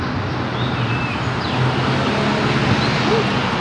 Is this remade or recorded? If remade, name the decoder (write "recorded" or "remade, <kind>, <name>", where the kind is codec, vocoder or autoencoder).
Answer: recorded